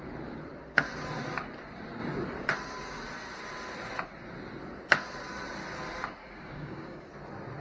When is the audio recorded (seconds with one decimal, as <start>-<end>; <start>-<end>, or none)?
0.0-6.2; 7.1-7.6